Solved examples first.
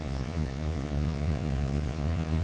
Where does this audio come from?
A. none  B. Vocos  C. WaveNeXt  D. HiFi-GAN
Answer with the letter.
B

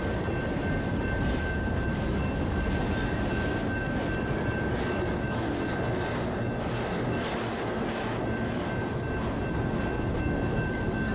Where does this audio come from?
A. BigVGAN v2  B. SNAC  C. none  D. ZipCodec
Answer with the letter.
C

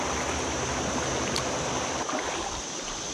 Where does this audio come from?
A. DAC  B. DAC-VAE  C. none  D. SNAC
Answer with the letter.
C